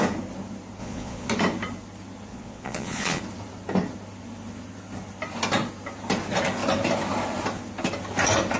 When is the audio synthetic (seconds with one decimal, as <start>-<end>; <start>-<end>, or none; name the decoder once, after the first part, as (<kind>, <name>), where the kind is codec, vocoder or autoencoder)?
0.8-1.3 (vocoder, Vocos); 2.3-3.2